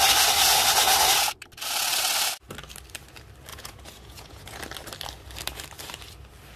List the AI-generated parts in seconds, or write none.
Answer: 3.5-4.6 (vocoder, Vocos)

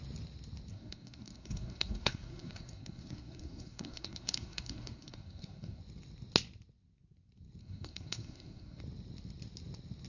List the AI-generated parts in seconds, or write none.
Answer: 0.7-5.8 (codec, SNAC); 7.6-8.8

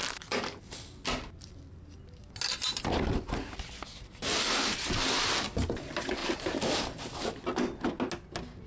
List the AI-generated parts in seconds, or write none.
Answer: 6.2-6.8 (vocoder, BigVGAN v2)

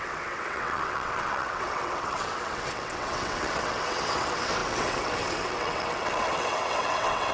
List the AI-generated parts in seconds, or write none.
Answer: 0.0-7.3 (vocoder, WaveNeXt)

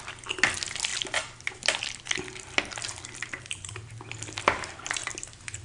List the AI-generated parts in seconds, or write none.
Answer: 3.2-3.8 (vocoder, BigVGAN v2)